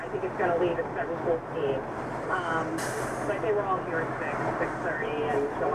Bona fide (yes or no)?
yes